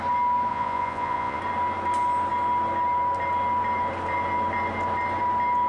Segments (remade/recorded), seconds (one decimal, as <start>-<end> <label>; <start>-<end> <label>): 0.0-0.5 recorded; 0.5-1.4 remade; 1.4-5.7 recorded